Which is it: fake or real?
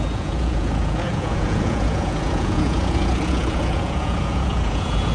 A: fake